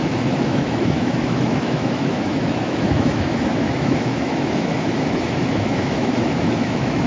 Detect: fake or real fake